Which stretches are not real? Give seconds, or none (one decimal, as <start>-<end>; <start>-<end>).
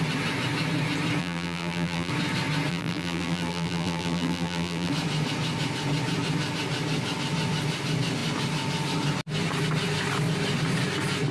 1.2-2.1; 2.7-4.9